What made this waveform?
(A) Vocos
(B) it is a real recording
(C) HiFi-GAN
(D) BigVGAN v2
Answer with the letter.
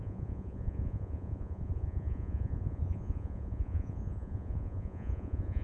A